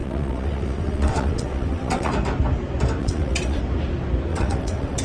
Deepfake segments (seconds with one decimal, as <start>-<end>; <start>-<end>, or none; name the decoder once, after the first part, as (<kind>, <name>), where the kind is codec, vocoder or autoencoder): 0.0-2.1 (vocoder, WaveNeXt); 3.0-3.6; 4.3-5.0